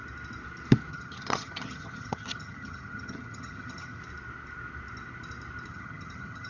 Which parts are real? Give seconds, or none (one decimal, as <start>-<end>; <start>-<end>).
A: 0.0-0.9; 4.0-5.7